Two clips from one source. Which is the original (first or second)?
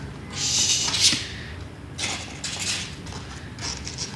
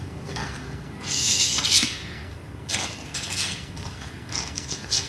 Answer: first